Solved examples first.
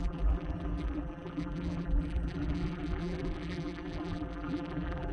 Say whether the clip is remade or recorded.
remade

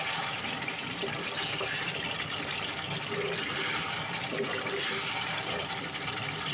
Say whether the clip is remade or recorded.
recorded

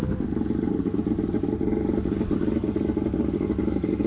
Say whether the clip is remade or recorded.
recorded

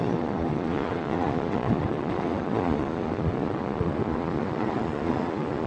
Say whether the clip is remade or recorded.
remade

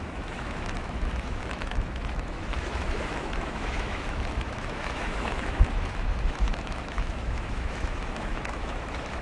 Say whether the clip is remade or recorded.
remade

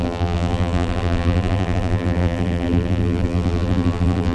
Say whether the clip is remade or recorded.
remade